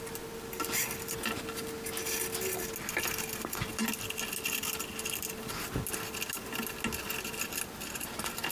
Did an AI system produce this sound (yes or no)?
no